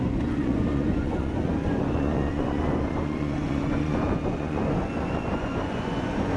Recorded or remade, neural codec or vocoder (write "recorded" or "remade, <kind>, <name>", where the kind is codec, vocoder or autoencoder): remade, vocoder, Vocos